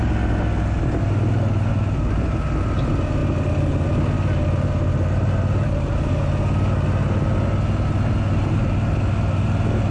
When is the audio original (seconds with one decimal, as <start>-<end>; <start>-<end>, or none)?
0.0-9.9